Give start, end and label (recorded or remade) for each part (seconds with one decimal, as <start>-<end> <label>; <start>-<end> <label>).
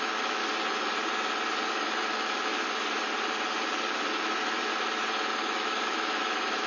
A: 0.0-0.4 remade; 0.4-1.7 recorded; 1.7-2.5 remade; 2.5-4.1 recorded; 4.1-4.7 remade; 4.7-5.3 recorded; 5.3-6.7 remade